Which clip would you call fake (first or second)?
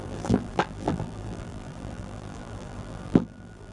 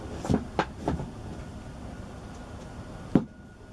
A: first